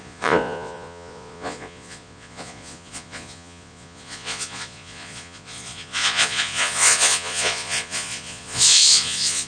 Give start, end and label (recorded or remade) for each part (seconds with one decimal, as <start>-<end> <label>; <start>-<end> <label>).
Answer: 0.0-9.5 remade